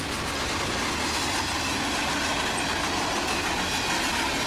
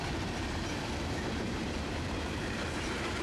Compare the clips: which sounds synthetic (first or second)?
second